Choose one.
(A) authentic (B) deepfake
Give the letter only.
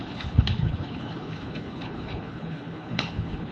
B